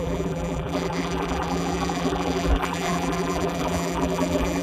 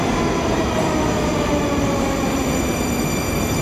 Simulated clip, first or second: first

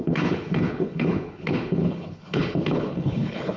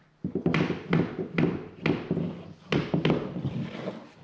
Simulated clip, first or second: first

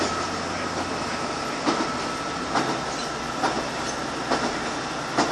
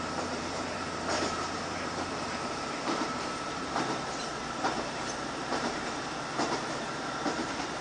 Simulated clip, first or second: second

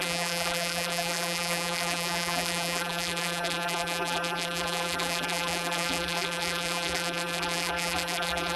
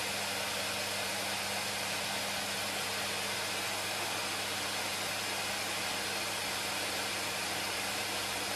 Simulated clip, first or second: first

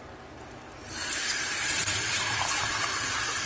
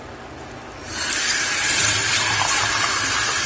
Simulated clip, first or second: first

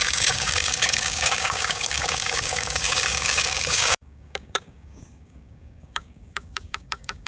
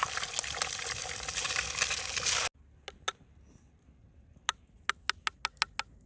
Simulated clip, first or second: first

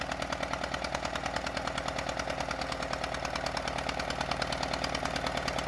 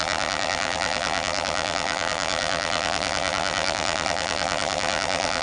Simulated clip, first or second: second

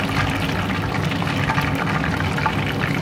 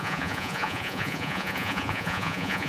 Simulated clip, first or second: second